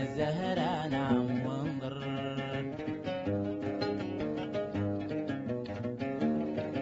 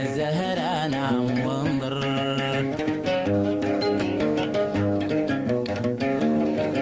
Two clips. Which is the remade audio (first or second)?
second